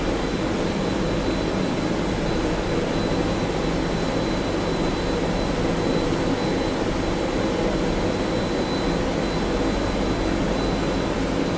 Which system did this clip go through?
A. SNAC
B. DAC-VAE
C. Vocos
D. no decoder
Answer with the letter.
D